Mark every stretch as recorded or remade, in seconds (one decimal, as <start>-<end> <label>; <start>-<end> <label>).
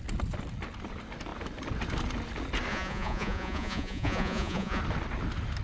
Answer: 0.0-2.7 recorded; 2.7-4.8 remade; 4.8-5.6 recorded